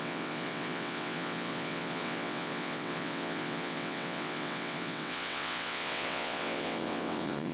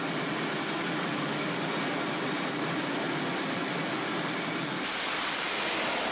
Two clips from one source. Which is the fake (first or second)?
first